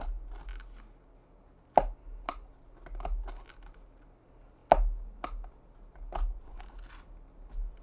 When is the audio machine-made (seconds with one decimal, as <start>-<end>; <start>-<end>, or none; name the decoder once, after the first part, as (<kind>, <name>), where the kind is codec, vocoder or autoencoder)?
none